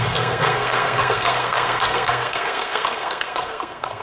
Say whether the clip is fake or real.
fake